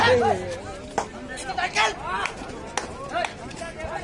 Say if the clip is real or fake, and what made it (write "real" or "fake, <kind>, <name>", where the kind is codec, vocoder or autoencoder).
real